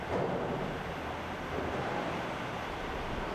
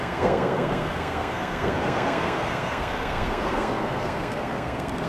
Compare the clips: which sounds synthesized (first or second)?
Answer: second